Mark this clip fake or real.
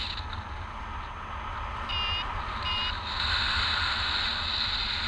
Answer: real